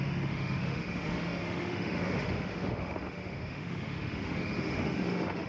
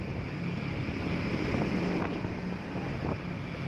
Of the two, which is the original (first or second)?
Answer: second